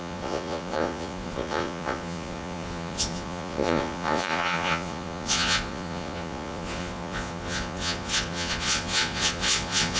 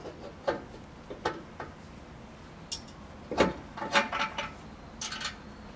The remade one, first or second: first